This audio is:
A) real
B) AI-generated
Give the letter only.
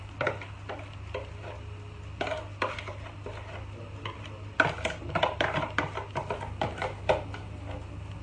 A